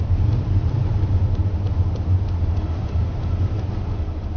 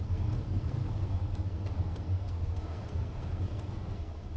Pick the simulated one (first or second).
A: second